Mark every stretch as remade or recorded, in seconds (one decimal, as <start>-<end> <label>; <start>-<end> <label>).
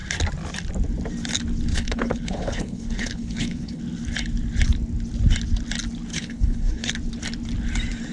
0.0-1.7 recorded; 1.7-3.8 remade; 3.8-6.1 recorded; 6.1-6.9 remade; 6.9-8.1 recorded